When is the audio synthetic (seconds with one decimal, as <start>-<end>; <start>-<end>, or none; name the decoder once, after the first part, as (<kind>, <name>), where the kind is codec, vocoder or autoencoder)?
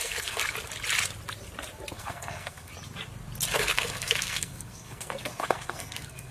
0.0-0.4 (codec, SNAC); 1.9-2.7; 3.5-6.3